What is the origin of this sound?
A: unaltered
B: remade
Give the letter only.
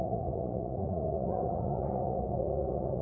B